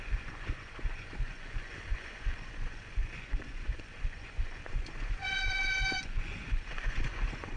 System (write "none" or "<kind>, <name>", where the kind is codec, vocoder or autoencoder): vocoder, Vocos